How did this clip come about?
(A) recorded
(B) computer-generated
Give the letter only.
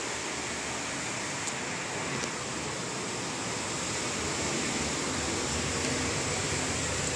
A